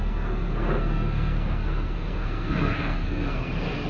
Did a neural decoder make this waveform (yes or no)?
yes